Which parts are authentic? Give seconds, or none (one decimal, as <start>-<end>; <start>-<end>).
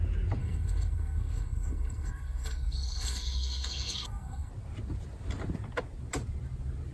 0.0-0.4; 4.5-6.9